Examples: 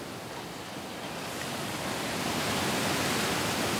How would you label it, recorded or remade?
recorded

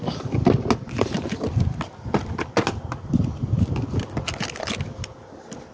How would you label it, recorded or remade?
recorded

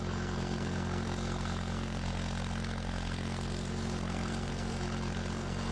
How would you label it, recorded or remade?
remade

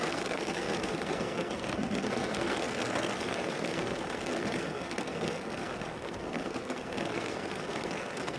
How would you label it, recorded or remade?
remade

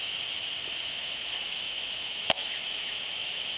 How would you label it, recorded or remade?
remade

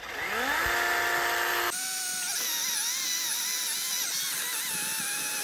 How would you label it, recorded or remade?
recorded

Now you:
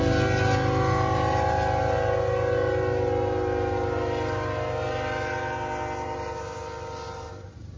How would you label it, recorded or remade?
recorded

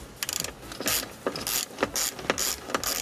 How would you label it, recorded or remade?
recorded